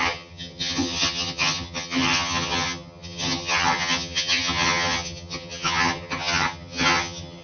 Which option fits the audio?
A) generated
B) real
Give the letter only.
A